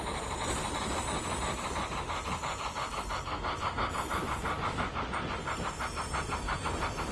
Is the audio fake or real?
real